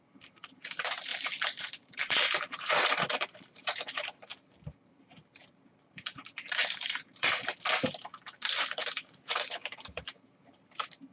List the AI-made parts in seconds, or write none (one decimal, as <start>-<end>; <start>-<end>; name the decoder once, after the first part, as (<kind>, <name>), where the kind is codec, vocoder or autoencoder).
0.0-1.1 (vocoder, BigVGAN v2); 1.6-11.1

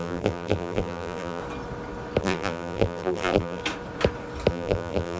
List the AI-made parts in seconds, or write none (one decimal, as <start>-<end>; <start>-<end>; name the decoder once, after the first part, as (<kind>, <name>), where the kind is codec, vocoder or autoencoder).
0.0-1.4 (vocoder, BigVGAN v2); 2.2-3.6; 4.5-5.2

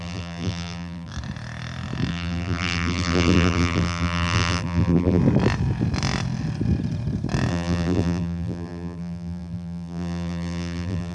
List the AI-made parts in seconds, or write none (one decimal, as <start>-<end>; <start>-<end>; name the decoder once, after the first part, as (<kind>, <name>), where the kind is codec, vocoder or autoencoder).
0.0-1.1 (vocoder, BigVGAN v2); 2.1-5.2; 7.5-11.1

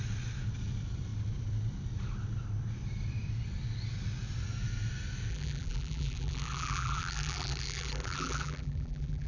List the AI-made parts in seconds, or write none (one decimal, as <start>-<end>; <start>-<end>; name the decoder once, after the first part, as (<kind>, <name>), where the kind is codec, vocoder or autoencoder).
5.3-9.3 (vocoder, BigVGAN v2)

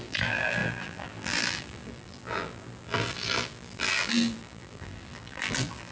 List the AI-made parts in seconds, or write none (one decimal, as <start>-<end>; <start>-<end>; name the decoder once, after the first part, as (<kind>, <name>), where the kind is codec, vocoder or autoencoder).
0.0-5.9 (vocoder, BigVGAN v2)